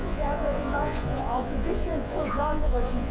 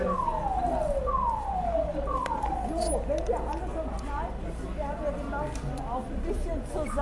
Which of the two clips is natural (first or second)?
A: second